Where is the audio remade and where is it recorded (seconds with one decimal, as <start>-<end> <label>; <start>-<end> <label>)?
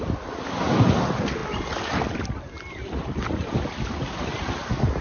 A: 0.0-5.0 recorded